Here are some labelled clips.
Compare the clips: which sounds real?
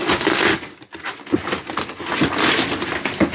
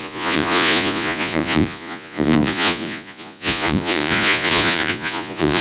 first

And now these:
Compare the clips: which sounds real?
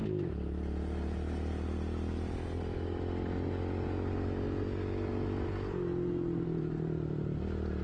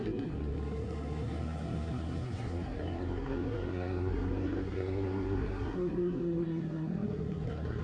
first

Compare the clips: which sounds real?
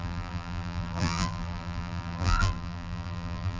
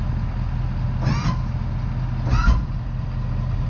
second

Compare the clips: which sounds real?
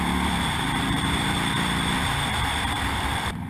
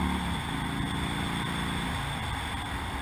second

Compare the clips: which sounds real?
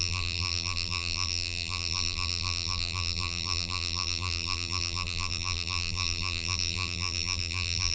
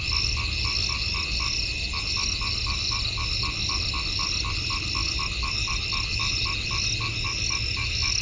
second